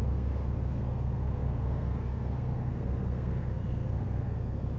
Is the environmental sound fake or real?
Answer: fake